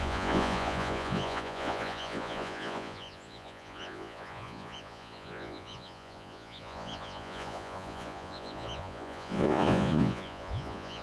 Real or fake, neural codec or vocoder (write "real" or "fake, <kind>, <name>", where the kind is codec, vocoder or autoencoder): fake, vocoder, Vocos